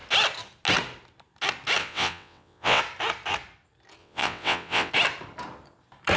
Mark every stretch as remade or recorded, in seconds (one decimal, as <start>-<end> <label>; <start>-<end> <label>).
0.0-1.8 recorded; 1.8-2.8 remade; 2.8-4.0 recorded; 4.0-4.9 remade; 4.9-6.2 recorded